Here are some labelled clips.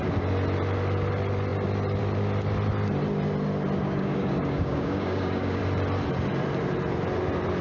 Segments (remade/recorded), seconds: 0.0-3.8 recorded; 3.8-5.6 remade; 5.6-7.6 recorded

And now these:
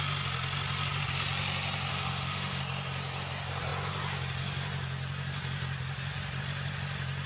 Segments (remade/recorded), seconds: 0.0-1.9 recorded; 1.9-2.6 remade; 2.6-7.3 recorded

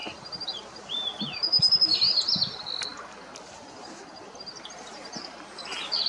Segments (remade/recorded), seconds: 0.0-1.2 remade; 1.2-6.1 recorded

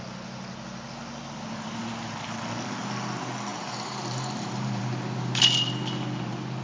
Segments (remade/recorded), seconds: 0.0-3.5 recorded; 3.5-5.4 remade; 5.4-6.6 recorded